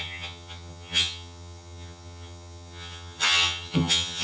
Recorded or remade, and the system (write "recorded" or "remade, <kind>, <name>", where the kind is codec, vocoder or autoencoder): remade, vocoder, HiFi-GAN